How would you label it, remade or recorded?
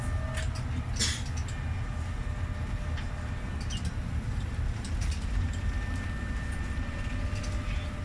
recorded